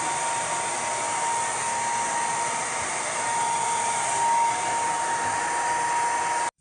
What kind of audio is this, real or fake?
real